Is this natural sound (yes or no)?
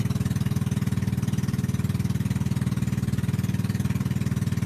no